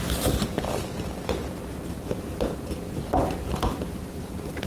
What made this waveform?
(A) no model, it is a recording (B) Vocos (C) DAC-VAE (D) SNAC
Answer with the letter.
A